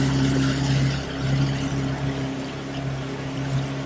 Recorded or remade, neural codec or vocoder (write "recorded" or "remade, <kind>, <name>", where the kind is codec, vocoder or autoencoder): recorded